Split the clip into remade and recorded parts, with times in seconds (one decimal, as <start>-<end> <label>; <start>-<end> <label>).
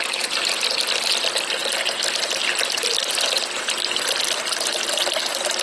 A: 0.0-5.6 recorded